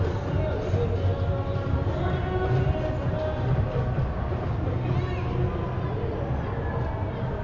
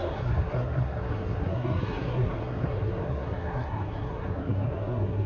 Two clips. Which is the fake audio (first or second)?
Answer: second